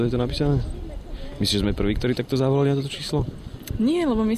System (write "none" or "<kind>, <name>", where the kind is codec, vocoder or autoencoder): none